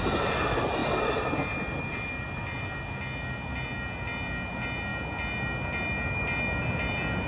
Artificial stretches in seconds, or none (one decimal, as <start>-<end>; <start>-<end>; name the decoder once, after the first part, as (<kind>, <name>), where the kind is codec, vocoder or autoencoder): none